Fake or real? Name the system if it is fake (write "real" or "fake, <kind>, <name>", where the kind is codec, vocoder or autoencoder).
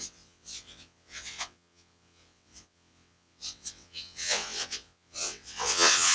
fake, vocoder, WaveNeXt